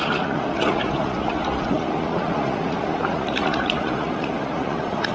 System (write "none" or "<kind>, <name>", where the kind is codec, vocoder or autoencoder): vocoder, Vocos